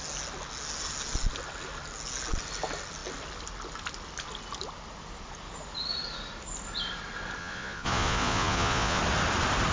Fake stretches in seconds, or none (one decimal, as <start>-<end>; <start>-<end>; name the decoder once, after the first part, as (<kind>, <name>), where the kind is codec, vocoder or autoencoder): 7.4-9.0 (vocoder, Vocos)